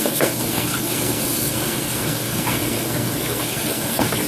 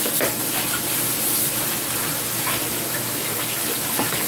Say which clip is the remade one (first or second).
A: first